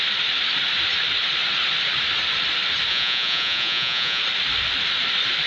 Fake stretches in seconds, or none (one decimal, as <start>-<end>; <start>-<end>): 2.9-4.2